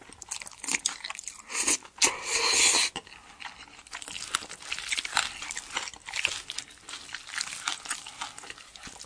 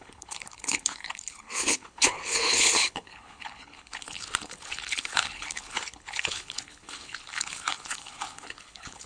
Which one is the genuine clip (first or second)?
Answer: first